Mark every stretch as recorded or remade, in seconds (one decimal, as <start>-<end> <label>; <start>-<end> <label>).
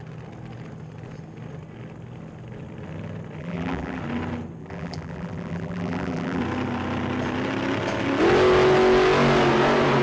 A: 0.0-3.4 recorded; 3.4-4.0 remade; 4.0-4.6 recorded; 4.6-6.4 remade; 6.4-10.0 recorded